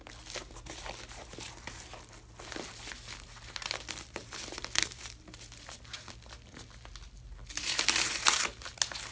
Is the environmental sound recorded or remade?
recorded